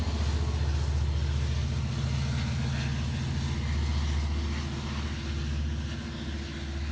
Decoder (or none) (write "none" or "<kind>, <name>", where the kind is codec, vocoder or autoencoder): none